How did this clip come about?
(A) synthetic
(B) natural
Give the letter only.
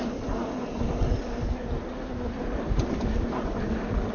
B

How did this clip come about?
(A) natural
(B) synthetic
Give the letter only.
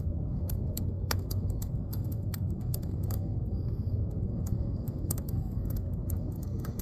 B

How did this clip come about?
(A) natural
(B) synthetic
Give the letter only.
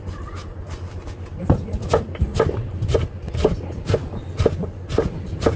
A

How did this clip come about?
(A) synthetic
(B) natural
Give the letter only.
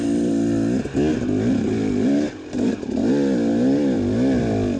B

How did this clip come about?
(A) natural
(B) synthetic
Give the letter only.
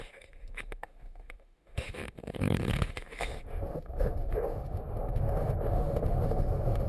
B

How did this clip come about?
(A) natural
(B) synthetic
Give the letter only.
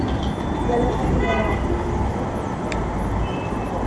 A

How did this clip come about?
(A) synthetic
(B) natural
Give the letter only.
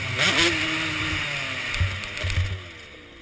B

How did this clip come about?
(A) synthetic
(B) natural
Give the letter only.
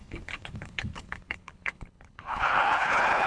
A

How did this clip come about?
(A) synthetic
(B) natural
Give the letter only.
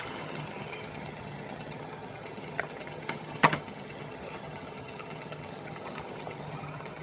A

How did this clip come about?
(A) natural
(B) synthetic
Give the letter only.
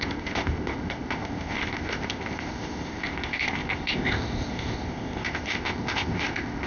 B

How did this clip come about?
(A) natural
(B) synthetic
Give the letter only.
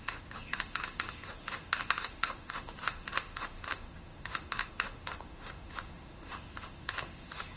B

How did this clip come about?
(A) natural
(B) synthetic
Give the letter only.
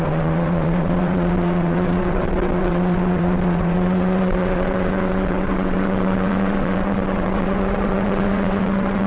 B